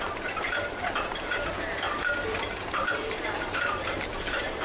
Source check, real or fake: fake